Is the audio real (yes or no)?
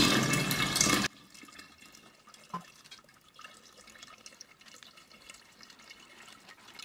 yes